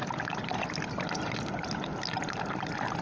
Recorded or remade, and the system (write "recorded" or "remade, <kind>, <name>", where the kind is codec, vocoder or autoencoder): recorded